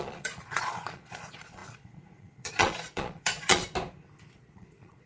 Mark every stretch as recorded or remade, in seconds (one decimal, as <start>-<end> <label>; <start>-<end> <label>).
0.0-3.6 remade; 3.6-4.3 recorded; 4.3-5.1 remade